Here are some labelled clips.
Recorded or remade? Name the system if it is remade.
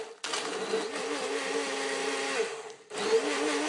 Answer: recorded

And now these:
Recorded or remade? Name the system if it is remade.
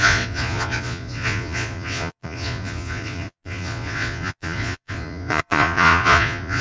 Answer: remade, vocoder, Vocos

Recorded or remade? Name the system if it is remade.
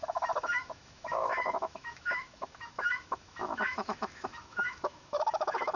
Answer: remade, autoencoder, DAC-VAE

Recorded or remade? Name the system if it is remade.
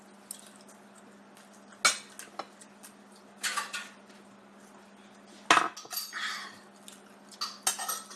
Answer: recorded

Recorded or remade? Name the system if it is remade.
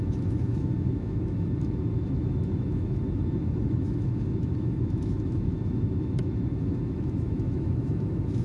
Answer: remade, autoencoder, DAC-VAE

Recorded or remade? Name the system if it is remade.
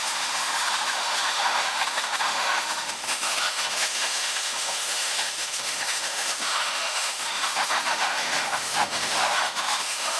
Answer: remade, autoencoder, DAC-VAE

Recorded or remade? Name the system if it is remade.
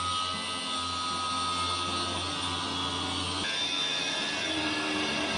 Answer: recorded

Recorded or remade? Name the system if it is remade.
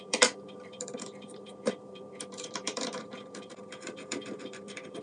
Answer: remade, vocoder, BigVGAN v2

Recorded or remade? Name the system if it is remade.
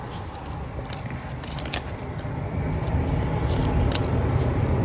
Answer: recorded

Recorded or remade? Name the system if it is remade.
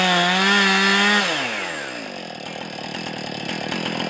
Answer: recorded